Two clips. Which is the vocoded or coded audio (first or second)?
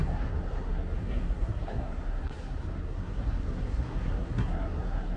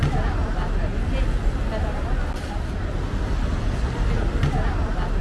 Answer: first